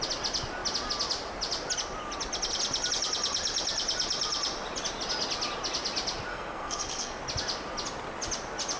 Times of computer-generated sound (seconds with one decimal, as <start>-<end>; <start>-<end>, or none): 6.3-7.2